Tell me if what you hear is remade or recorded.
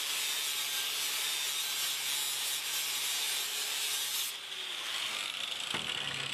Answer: recorded